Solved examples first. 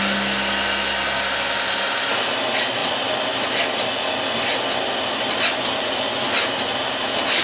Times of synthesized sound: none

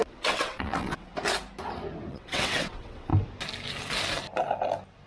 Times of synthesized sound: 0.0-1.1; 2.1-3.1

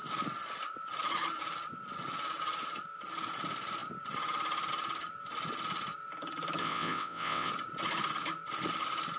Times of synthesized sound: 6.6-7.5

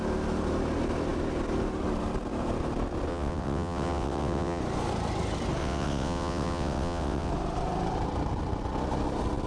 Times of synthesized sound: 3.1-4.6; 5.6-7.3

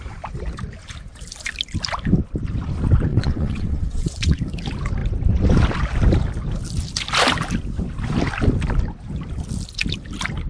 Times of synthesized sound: 3.1-4.4

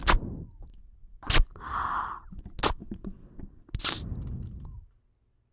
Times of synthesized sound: 2.8-3.4

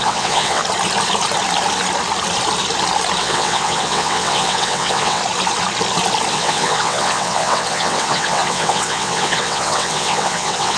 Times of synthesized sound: 0.0-0.6; 3.2-5.2; 6.3-10.8

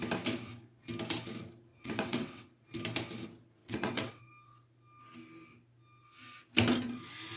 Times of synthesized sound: 1.7-2.5; 3.6-4.2